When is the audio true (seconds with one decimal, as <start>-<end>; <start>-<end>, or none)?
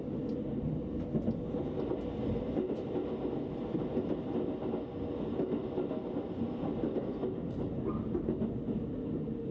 0.0-9.5